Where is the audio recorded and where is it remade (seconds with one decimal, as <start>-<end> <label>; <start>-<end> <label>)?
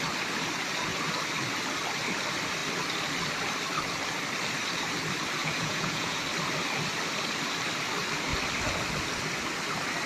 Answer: 0.0-5.4 recorded; 5.4-6.2 remade; 6.2-10.1 recorded